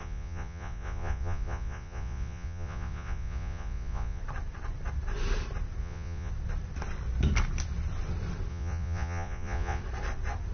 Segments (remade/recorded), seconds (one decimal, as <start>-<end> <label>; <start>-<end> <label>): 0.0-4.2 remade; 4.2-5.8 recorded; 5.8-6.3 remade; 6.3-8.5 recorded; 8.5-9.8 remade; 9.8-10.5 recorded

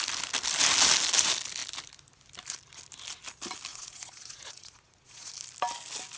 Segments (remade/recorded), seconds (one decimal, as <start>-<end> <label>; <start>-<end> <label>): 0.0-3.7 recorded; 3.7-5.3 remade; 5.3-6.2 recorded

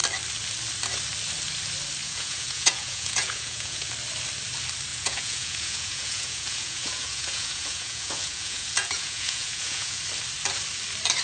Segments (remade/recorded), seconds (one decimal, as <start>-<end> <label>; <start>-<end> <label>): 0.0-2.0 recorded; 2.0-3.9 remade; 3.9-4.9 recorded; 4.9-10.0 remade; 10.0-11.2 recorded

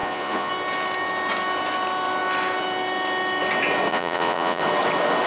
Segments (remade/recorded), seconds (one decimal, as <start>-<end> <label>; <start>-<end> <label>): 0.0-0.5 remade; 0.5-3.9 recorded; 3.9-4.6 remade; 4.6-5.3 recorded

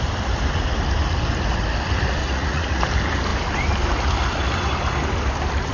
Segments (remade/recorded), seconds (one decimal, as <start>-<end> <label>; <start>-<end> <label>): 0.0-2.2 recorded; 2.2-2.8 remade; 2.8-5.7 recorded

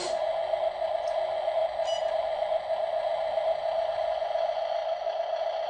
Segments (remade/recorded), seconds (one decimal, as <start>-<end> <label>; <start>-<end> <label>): 0.0-1.6 remade; 1.6-2.2 recorded; 2.2-3.1 remade; 3.1-4.0 recorded; 4.0-4.8 remade; 4.8-5.7 recorded